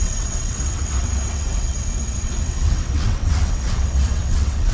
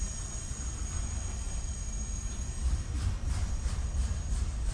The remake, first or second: first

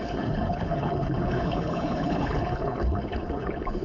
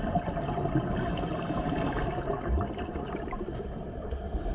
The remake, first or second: first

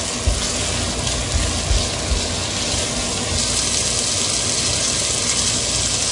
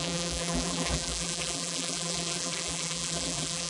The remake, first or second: second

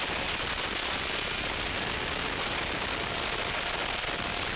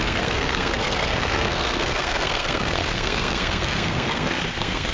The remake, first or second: second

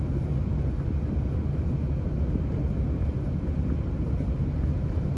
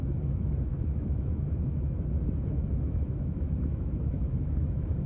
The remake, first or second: second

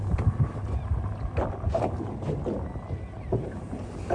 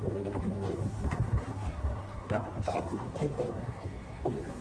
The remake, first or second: second